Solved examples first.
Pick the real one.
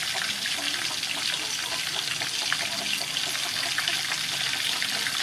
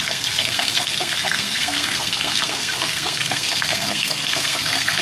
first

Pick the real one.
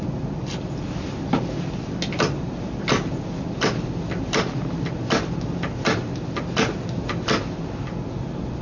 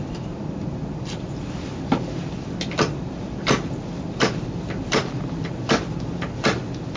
first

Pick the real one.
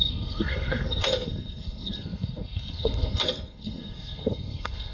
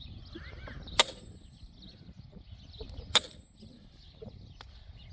second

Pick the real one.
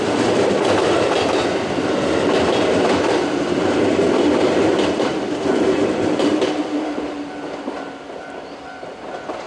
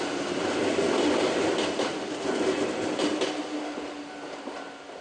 second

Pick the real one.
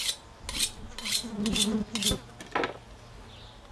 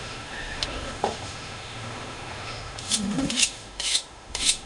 first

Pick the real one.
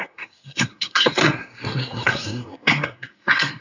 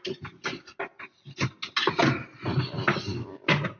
second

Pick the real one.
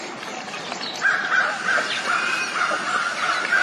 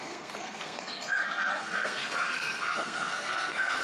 first